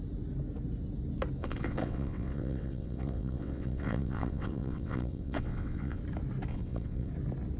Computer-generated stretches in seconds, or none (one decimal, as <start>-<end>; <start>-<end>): 1.4-6.0; 6.5-7.1